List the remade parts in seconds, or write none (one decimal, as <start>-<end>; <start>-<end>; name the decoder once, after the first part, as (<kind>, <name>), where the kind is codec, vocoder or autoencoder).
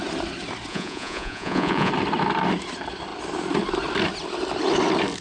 0.7-1.9 (vocoder, Vocos)